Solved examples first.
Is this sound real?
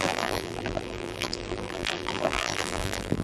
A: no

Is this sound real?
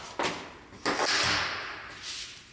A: yes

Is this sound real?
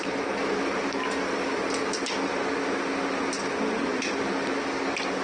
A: yes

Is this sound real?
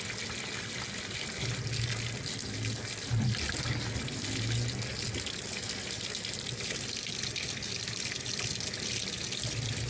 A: yes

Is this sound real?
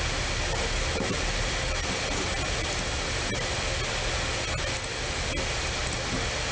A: yes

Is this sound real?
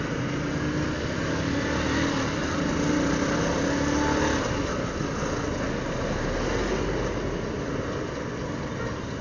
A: yes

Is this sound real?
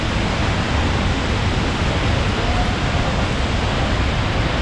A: yes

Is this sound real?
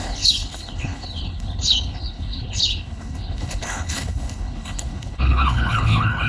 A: no